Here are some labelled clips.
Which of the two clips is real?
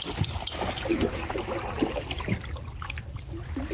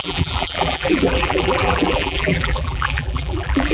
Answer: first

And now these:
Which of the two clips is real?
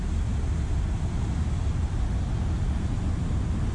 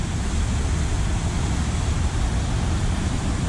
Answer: first